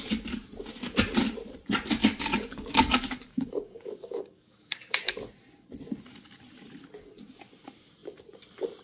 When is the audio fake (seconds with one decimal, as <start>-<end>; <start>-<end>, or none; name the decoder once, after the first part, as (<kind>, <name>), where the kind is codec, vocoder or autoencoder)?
2.0-5.1 (codec, DAC)